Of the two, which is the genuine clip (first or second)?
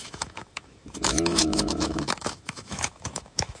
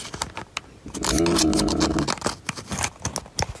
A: second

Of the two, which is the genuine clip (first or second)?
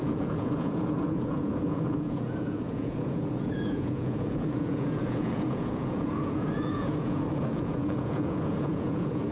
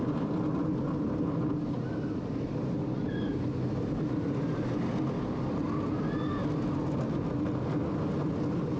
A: second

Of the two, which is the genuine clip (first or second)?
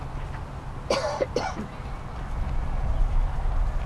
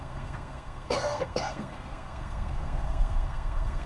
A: first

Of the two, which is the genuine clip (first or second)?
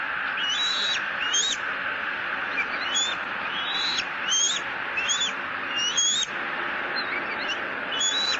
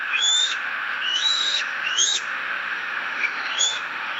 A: first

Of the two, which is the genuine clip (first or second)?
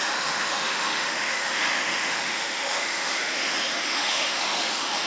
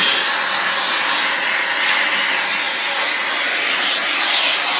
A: second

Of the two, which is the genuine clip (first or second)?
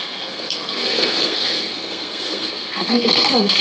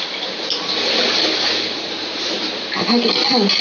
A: second